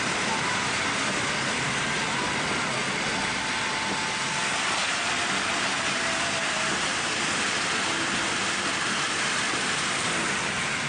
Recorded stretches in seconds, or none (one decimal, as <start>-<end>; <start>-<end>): 0.0-10.9

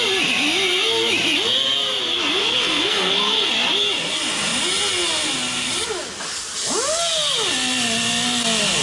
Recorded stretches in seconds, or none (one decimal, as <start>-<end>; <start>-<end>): 0.0-2.4; 3.5-8.8

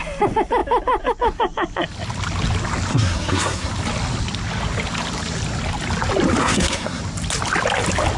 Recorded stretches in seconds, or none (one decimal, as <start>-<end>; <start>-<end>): 0.0-2.9; 3.7-6.4; 7.0-8.2

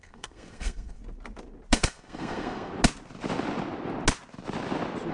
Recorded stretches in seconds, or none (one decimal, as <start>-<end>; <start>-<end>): 1.0-1.7; 2.7-5.1

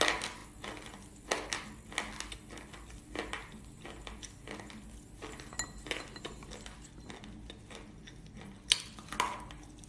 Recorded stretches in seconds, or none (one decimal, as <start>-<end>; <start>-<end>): 0.0-9.9

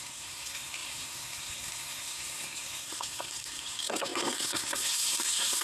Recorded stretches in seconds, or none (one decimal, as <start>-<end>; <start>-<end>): none